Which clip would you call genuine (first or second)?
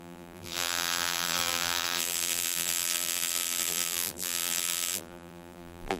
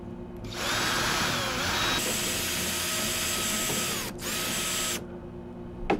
second